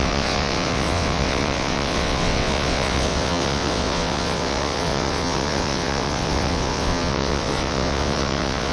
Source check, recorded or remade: remade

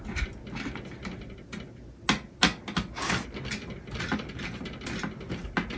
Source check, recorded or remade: recorded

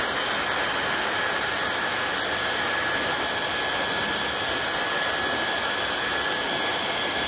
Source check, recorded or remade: recorded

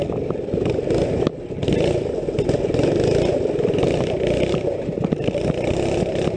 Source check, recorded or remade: recorded